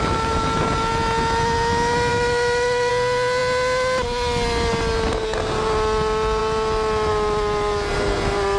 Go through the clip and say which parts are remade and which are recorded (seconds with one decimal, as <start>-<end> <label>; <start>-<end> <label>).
0.0-2.1 recorded; 2.1-2.9 remade; 2.9-8.6 recorded